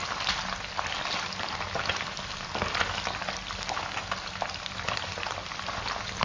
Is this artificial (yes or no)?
no